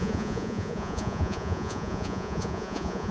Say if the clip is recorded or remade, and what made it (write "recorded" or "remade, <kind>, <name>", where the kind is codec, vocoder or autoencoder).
remade, vocoder, Vocos